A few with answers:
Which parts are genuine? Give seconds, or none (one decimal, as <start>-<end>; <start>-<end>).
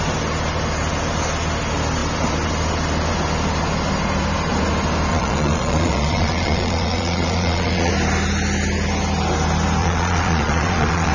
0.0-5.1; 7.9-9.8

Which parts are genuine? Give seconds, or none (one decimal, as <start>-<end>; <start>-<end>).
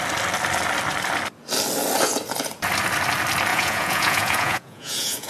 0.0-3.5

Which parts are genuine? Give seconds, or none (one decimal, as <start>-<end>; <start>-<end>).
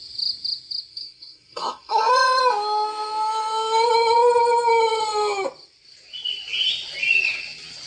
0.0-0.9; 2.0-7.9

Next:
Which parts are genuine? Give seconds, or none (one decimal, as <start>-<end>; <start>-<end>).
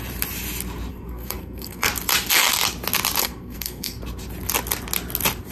0.0-0.9; 1.9-3.2; 4.0-5.5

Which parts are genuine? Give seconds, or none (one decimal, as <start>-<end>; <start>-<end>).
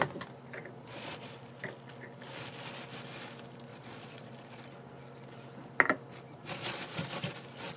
0.0-0.6; 1.3-3.7; 4.6-6.3; 7.0-7.8